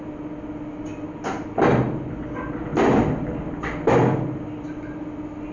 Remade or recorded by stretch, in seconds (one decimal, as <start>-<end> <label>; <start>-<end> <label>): 0.0-2.7 recorded; 2.7-3.6 remade; 3.6-5.5 recorded

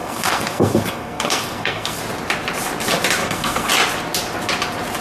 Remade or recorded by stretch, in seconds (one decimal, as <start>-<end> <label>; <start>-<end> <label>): 0.0-2.0 remade; 2.0-3.2 recorded; 3.2-3.7 remade; 3.7-5.0 recorded

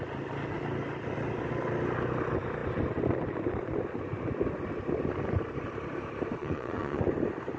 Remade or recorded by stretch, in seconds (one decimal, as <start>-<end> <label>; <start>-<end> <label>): 0.0-6.4 recorded; 6.4-7.1 remade; 7.1-7.6 recorded

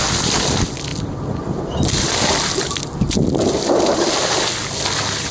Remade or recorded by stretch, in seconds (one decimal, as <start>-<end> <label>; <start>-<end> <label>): 0.0-5.3 recorded

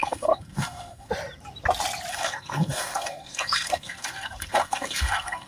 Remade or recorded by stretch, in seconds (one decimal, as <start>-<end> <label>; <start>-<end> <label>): 0.0-1.1 remade; 1.1-2.1 recorded; 2.1-5.5 remade

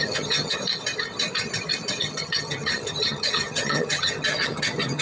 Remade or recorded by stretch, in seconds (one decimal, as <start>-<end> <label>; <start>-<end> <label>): 0.0-0.6 remade; 0.6-2.0 recorded; 2.0-5.0 remade

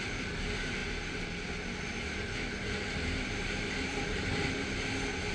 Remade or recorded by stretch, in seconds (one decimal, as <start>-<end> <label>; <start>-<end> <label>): 0.0-5.3 recorded